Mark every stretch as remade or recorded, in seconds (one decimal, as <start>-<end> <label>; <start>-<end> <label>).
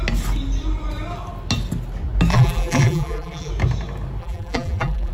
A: 0.0-2.3 recorded; 2.3-3.5 remade; 3.5-4.2 recorded; 4.2-5.1 remade